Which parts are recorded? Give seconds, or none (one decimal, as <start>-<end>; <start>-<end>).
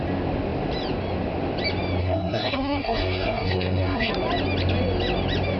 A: 0.0-2.0; 4.1-5.6